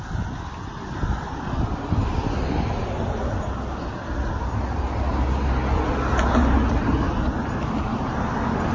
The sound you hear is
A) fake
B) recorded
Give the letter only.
B